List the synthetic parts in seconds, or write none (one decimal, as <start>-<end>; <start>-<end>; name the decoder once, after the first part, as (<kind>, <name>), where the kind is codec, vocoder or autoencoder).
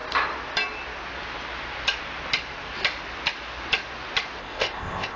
4.4-5.2 (codec, ZipCodec)